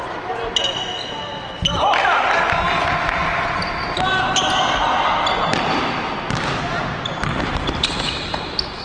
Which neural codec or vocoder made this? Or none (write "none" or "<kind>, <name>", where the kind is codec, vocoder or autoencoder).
none